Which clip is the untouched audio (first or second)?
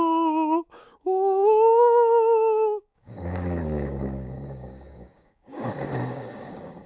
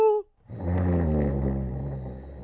second